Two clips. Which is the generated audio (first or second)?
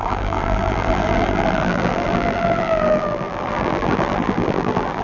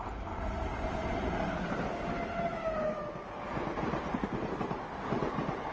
first